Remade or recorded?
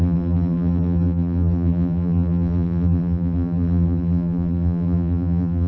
remade